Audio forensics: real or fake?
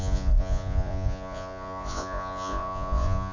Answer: fake